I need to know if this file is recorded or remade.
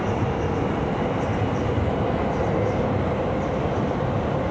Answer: recorded